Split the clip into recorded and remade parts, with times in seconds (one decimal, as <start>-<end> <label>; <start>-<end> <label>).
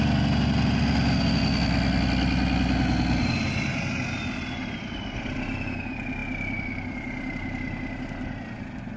0.0-9.0 recorded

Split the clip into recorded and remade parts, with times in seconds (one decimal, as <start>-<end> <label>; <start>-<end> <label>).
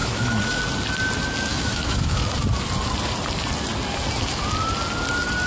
0.0-0.6 remade; 0.6-1.5 recorded; 1.5-2.3 remade; 2.3-5.5 recorded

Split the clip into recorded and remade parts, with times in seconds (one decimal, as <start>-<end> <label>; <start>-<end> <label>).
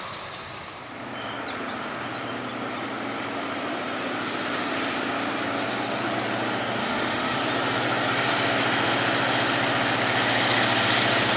0.0-6.8 recorded; 6.8-7.4 remade; 7.4-11.4 recorded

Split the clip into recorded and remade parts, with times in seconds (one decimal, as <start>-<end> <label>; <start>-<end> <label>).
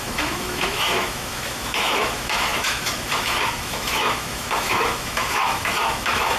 0.0-6.4 remade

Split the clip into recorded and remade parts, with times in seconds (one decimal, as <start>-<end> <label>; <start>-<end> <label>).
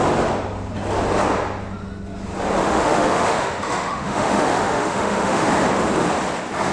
0.0-2.6 recorded; 2.6-5.5 remade; 5.5-6.7 recorded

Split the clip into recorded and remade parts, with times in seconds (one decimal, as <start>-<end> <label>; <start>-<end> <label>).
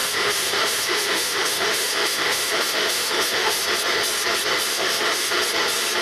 0.0-3.6 remade; 3.6-4.7 recorded; 4.7-5.4 remade; 5.4-6.0 recorded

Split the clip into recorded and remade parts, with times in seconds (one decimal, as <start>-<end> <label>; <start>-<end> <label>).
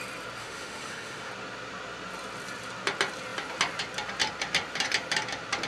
0.0-0.4 recorded; 0.4-1.3 remade; 1.3-5.7 recorded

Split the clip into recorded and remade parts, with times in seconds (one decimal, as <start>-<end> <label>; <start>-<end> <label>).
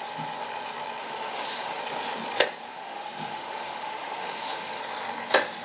0.0-1.0 recorded; 1.0-1.8 remade; 1.8-2.7 recorded; 2.7-4.8 remade; 4.8-5.6 recorded